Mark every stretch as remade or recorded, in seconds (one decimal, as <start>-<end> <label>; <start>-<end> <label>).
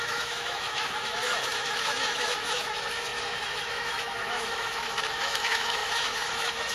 0.0-6.7 remade